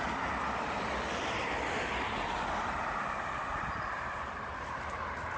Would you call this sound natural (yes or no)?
yes